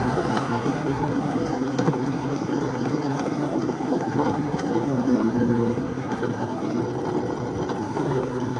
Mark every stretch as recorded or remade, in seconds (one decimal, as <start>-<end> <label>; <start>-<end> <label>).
0.0-6.8 remade; 6.8-7.8 recorded; 7.8-8.6 remade